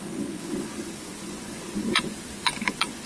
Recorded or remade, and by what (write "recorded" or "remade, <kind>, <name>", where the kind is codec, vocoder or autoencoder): remade, vocoder, Vocos